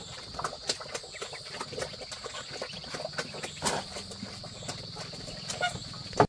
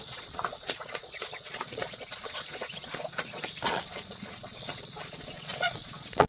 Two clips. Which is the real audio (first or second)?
first